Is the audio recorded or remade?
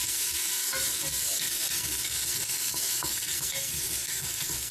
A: remade